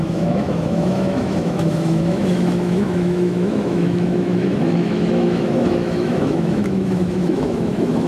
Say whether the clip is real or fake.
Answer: fake